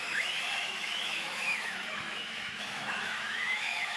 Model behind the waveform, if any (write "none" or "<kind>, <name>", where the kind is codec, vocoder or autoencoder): autoencoder, DAC-VAE